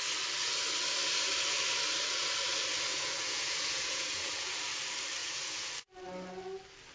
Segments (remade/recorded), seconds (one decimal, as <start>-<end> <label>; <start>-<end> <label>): 0.0-2.9 recorded; 2.9-4.5 remade; 4.5-5.2 recorded; 5.2-5.7 remade; 5.7-6.9 recorded